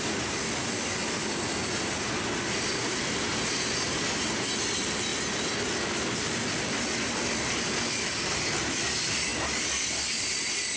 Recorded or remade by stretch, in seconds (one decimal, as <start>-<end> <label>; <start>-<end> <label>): 0.0-10.8 recorded